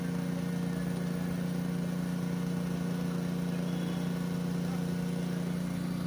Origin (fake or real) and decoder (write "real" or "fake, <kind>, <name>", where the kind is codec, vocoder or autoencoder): real